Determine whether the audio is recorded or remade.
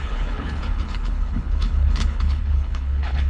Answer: remade